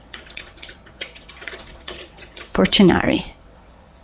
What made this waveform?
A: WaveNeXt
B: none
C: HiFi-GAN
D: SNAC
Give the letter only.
A